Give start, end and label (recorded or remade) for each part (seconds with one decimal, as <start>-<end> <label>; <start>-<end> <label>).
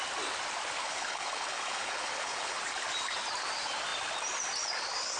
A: 0.0-0.8 recorded; 0.8-2.6 remade; 2.6-5.2 recorded